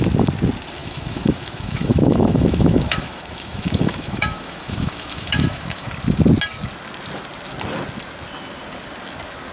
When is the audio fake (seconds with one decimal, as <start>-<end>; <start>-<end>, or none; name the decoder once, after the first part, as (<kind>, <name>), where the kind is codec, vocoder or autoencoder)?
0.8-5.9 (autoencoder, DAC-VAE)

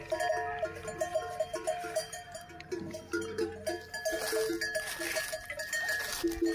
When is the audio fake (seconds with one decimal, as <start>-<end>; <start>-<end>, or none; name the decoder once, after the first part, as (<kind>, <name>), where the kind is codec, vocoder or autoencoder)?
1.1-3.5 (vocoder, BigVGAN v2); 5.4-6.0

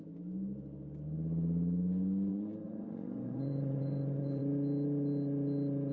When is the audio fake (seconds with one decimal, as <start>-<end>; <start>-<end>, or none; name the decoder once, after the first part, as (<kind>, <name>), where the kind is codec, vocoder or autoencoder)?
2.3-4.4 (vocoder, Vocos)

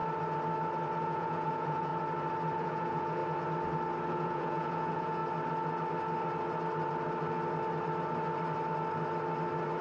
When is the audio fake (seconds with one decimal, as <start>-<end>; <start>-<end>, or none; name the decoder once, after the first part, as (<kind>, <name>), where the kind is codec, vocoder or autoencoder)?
1.0-1.9 (vocoder, Vocos); 2.6-3.2; 4.1-5.2

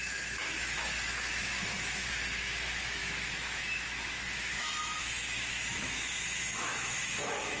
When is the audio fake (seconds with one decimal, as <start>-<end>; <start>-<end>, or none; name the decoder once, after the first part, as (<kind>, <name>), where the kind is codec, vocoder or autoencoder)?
0.0-7.6 (autoencoder, DAC-VAE)